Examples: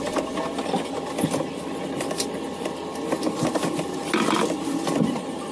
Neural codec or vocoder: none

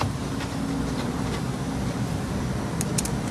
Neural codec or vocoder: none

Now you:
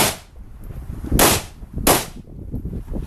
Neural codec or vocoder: none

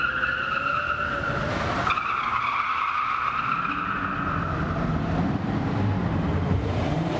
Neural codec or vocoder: none